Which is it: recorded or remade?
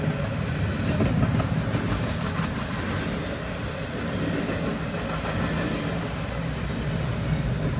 recorded